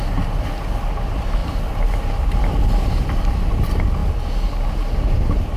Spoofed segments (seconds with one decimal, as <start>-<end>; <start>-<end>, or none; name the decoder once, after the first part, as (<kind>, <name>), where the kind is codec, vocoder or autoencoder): 1.4-2.3 (vocoder, BigVGAN v2)